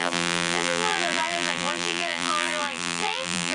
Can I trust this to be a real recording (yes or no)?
no